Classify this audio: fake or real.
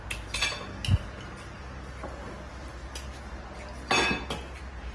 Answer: real